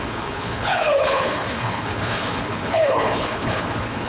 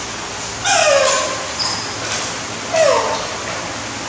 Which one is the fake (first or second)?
first